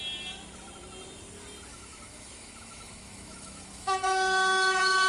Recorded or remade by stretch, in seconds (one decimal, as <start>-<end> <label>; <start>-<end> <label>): 0.0-1.7 recorded; 1.7-5.1 remade